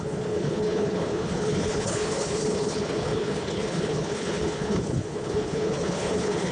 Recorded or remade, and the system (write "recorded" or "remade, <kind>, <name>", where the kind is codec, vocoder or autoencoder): remade, codec, HILCodec